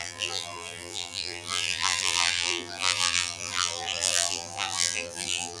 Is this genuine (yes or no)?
no